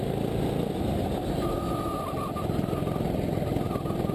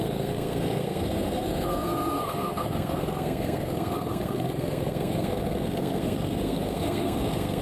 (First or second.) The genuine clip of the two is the first